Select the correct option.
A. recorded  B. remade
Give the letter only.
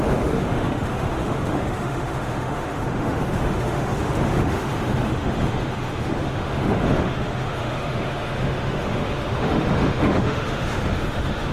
B